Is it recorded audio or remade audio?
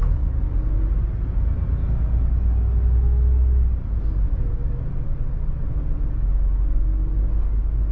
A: recorded